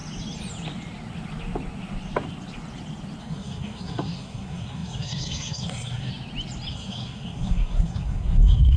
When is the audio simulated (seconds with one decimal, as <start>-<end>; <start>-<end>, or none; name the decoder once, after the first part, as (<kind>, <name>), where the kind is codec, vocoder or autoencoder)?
3.2-6.1 (codec, SNAC); 6.7-8.8

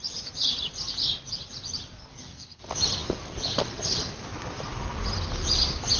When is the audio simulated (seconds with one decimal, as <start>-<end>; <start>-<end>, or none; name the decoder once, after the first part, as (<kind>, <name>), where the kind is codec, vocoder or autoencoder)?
2.1-2.6 (codec, SNAC)

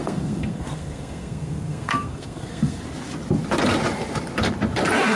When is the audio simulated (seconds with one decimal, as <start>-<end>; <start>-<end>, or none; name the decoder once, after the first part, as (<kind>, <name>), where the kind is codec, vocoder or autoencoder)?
0.0-2.8 (codec, SNAC)

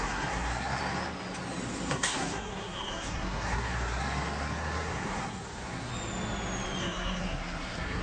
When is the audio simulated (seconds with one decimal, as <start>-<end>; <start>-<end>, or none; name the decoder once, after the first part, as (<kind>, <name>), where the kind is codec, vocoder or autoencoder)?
0.0-0.8 (codec, SNAC); 1.9-5.9; 6.8-8.0

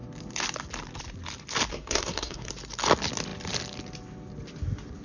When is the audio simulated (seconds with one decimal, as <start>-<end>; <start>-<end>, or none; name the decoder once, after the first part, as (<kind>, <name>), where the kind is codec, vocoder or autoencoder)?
1.7-2.5 (codec, SNAC)

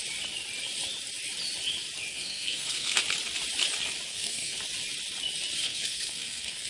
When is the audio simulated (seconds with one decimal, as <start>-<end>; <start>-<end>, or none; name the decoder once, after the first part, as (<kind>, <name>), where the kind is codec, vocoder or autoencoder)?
2.1-3.0 (codec, SNAC); 4.1-4.6; 5.6-6.7

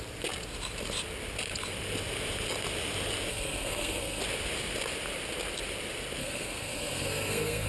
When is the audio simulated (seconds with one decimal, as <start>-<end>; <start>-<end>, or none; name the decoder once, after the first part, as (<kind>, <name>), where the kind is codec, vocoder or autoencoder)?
3.3-4.2 (codec, SNAC); 6.2-7.7